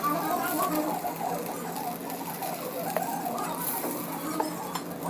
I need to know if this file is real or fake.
real